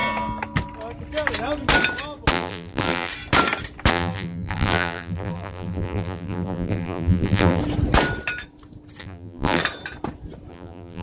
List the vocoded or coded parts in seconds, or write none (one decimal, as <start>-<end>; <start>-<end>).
2.3-3.1; 3.9-7.6; 9.0-9.6; 10.5-11.0